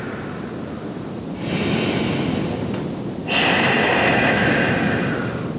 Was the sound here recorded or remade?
recorded